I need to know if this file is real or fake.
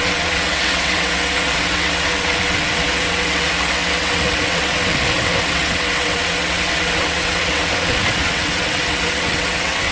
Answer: fake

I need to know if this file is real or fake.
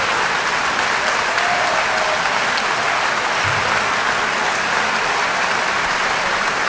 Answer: real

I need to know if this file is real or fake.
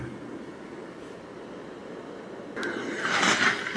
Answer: real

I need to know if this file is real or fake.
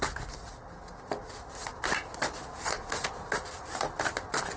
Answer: real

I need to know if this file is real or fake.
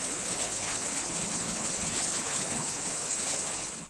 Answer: fake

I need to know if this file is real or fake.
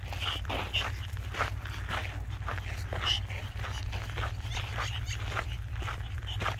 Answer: real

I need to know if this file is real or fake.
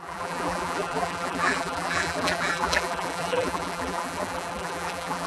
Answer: fake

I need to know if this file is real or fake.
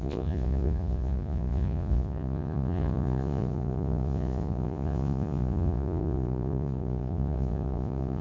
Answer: fake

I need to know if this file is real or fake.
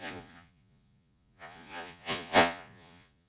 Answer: fake